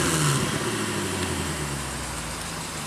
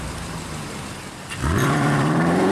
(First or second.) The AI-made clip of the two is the second